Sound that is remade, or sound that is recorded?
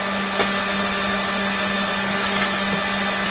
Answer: recorded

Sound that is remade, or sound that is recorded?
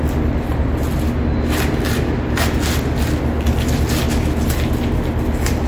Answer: recorded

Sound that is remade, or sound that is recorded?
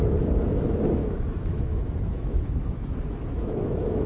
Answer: remade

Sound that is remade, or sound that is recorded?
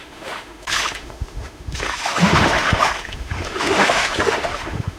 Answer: remade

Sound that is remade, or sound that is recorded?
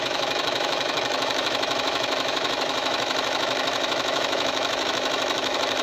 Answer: remade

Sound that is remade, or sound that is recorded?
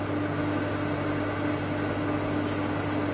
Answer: recorded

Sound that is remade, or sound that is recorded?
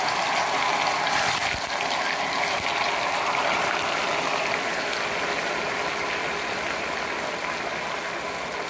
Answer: recorded